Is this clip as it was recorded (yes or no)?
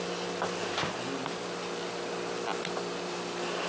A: yes